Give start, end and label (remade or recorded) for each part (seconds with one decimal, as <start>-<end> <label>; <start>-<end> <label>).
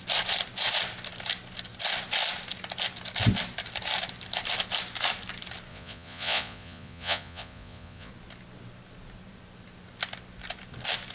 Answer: 0.0-5.7 recorded; 5.7-8.1 remade; 8.1-11.1 recorded